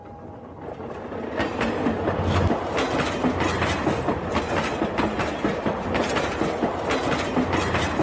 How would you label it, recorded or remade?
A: recorded